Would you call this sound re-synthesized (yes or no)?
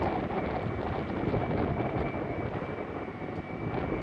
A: no